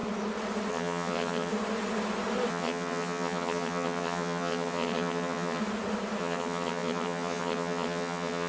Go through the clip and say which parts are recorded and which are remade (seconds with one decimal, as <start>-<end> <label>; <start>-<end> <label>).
0.0-0.7 recorded; 0.7-1.5 remade; 1.5-2.5 recorded; 2.5-5.6 remade; 5.6-6.2 recorded; 6.2-8.5 remade